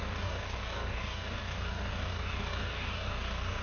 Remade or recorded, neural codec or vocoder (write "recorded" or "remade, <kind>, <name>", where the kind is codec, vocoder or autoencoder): remade, codec, DAC